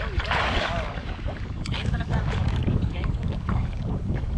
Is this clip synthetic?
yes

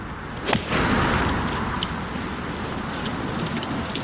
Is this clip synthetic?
no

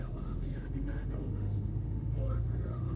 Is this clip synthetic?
yes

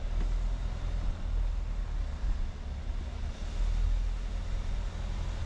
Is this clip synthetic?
no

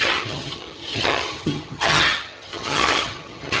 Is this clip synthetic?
yes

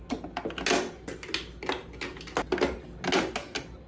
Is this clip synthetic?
no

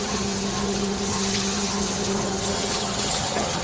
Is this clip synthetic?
yes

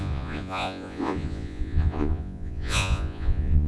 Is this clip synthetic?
yes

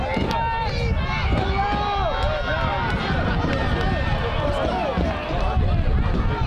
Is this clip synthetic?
no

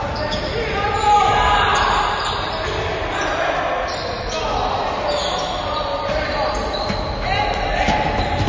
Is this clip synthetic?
no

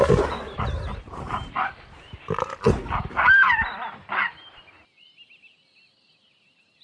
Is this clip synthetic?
no